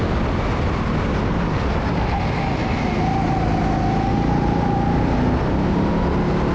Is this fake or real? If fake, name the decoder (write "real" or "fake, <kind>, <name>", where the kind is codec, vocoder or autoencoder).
real